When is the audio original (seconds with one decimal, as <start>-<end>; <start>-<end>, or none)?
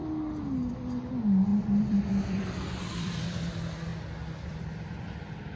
0.0-1.5; 3.5-5.6